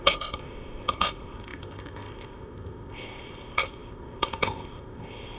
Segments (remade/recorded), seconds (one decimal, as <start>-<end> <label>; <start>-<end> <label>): 0.0-5.4 remade